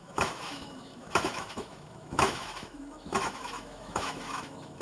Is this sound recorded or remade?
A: remade